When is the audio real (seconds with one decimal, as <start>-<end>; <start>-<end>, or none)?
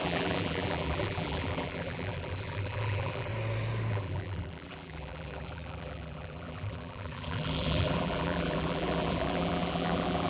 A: 3.3-3.9